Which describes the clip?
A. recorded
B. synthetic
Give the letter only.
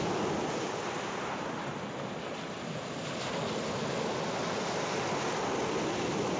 A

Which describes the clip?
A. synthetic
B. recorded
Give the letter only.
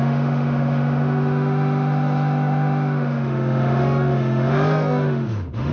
A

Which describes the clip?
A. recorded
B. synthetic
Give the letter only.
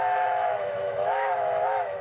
B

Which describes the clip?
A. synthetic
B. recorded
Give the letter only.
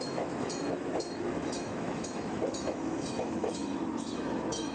A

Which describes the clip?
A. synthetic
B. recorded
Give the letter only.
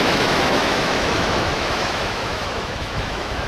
A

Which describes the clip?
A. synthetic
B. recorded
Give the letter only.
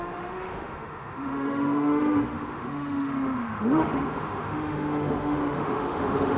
A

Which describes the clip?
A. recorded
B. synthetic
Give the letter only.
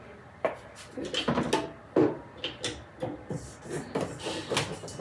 A